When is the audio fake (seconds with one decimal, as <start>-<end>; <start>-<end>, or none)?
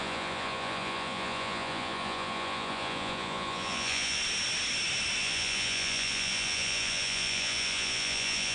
0.0-4.2; 5.2-8.5